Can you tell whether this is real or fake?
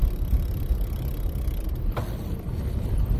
real